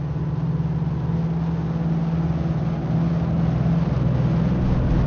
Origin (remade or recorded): recorded